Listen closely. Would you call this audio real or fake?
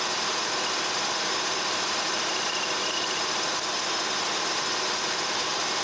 real